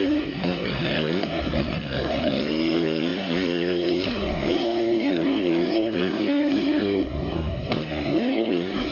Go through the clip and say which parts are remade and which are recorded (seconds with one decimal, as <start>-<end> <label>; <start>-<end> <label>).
0.0-8.9 remade